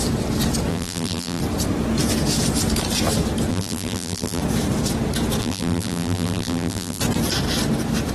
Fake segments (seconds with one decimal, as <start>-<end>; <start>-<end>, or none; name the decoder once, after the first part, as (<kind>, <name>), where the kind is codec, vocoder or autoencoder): 0.7-1.4 (vocoder, BigVGAN v2); 3.5-4.4; 5.4-7.0